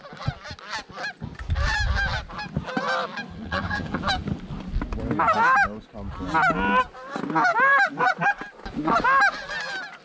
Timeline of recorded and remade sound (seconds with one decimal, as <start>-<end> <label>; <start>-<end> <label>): 0.0-3.3 recorded; 3.3-4.0 remade; 4.0-10.0 recorded